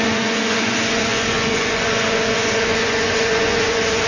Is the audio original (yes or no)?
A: no